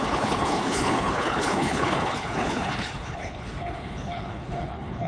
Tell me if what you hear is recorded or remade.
remade